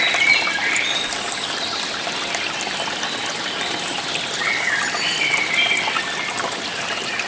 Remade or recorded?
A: recorded